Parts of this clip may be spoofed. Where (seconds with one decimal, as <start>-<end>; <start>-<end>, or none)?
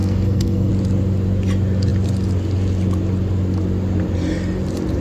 0.0-0.7